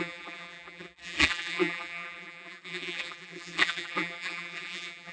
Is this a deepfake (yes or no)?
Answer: yes